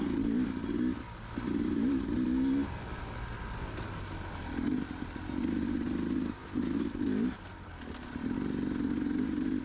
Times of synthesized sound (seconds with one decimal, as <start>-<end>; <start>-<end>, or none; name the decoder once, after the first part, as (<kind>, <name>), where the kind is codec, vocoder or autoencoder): none